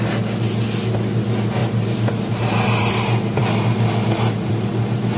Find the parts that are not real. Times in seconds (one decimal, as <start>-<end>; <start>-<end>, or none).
none